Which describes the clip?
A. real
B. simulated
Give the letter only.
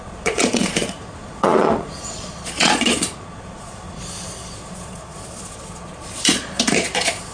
B